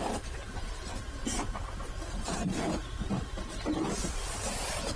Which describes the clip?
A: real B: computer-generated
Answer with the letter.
B